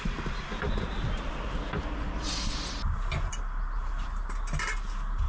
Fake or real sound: real